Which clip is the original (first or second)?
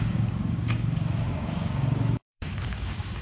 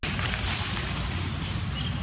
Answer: second